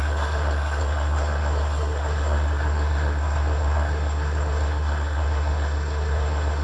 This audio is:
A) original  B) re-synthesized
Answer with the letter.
B